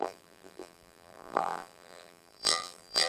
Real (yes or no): no